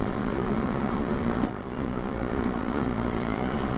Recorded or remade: remade